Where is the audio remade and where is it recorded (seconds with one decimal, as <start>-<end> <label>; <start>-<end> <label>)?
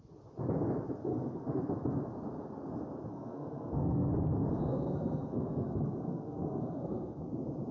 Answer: 0.0-1.1 recorded; 1.1-1.7 remade; 1.7-3.1 recorded; 3.1-4.1 remade; 4.1-4.7 recorded; 4.7-7.2 remade; 7.2-7.7 recorded